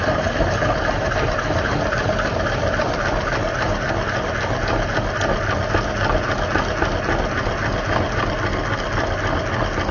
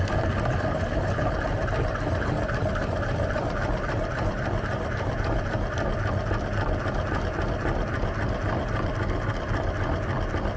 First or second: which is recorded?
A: first